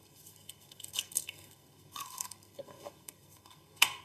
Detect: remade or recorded remade